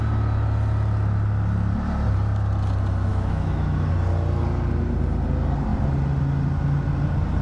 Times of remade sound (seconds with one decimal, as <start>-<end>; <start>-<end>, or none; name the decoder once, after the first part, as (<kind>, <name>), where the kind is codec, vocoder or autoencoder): 3.1-3.9 (autoencoder, DAC-VAE)